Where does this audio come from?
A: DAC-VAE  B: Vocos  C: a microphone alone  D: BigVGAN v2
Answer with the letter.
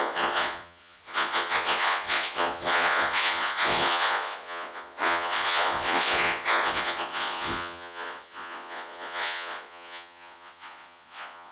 B